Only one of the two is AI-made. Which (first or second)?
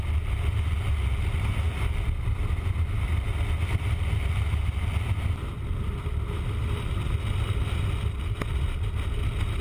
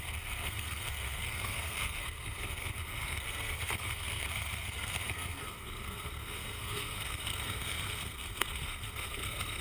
second